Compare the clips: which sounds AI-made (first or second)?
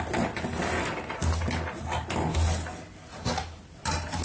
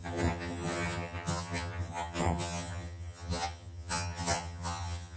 second